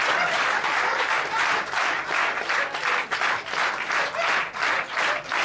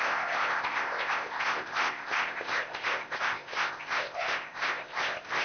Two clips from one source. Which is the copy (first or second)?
second